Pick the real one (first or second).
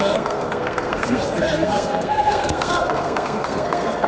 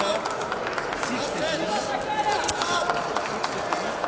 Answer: second